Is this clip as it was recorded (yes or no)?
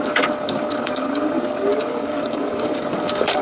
no